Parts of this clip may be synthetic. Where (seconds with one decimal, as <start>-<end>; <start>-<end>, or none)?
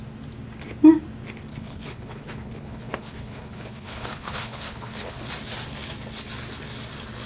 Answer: 1.5-5.3